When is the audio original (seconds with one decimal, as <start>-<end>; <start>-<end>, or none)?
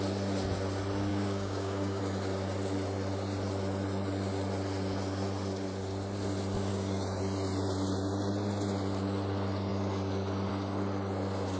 0.0-1.1; 2.0-6.7; 7.2-11.6